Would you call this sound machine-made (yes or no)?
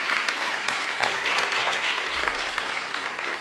yes